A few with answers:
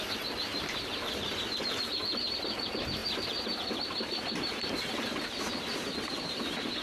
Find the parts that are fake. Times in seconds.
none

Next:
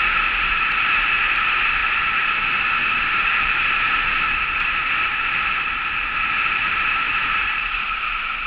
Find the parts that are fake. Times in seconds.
0.0-1.8 (vocoder, BigVGAN v2); 2.4-5.1; 6.7-8.5

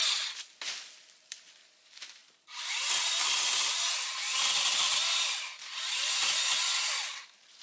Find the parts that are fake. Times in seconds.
none

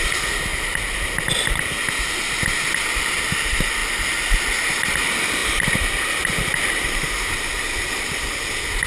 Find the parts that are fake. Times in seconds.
0.0-0.5 (vocoder, BigVGAN v2); 2.2-3.8; 4.6-8.9

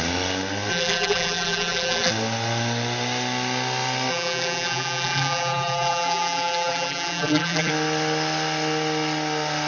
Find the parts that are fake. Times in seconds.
0.7-2.1 (vocoder, BigVGAN v2); 4.1-7.7

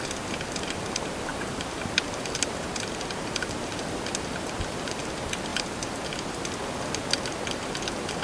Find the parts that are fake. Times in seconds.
1.3-5.0 (vocoder, BigVGAN v2)